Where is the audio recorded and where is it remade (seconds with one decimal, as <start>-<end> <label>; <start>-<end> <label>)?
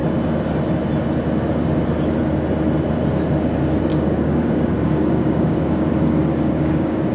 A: 0.0-3.9 recorded; 3.9-7.1 remade